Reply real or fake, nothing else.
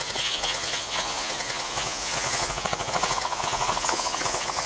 fake